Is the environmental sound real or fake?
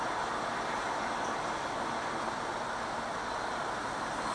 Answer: real